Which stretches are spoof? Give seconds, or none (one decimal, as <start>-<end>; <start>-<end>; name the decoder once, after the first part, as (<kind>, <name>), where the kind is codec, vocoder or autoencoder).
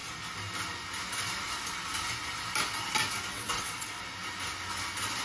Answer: 3.3-4.0 (vocoder, WaveNeXt)